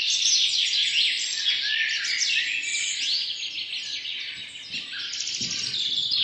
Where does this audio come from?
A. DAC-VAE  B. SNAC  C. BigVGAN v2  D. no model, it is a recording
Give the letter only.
D